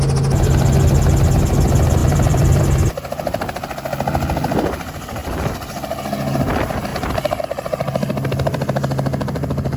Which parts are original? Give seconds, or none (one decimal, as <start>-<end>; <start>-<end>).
0.0-2.0; 2.6-9.8